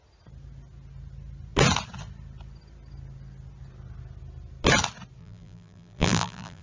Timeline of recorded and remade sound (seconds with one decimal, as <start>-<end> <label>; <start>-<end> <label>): 0.0-5.2 recorded; 5.2-6.6 remade